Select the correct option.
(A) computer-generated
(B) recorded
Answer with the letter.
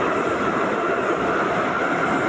B